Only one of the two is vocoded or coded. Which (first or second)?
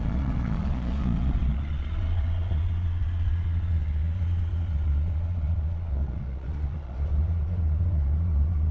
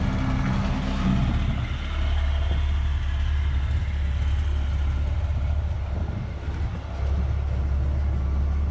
first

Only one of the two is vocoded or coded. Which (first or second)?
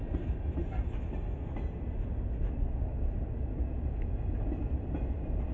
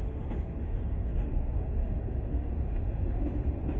second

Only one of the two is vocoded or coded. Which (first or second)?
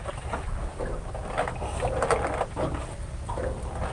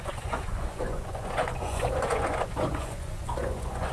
second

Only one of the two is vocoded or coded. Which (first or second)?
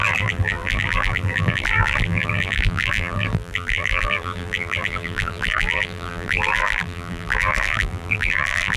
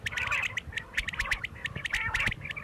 first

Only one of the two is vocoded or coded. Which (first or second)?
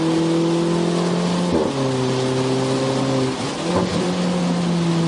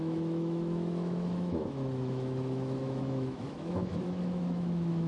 second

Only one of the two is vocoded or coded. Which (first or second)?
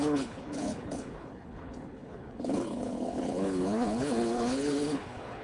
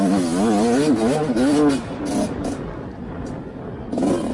first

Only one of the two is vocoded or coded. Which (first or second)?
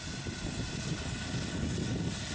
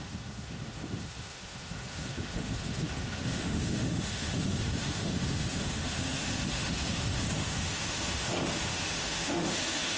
second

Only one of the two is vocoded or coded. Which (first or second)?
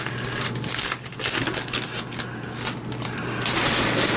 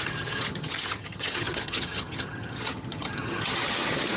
second